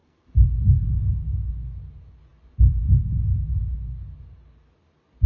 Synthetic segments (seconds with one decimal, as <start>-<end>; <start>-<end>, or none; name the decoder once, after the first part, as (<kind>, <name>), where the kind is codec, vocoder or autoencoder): 0.0-1.5 (codec, SNAC)